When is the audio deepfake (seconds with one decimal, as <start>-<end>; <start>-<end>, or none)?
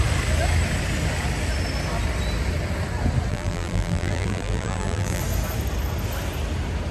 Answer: 3.3-5.2